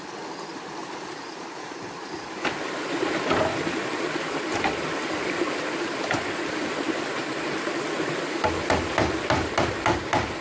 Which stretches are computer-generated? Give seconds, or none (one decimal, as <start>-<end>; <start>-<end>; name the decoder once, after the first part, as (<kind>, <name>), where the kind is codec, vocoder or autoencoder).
0.8-2.6 (vocoder, BigVGAN v2)